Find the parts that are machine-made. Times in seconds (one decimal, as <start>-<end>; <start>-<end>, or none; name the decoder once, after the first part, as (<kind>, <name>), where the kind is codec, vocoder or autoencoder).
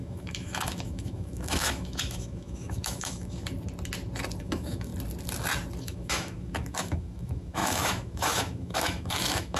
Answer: 0.0-3.4 (autoencoder, DAC-VAE); 4.4-4.9; 5.8-9.6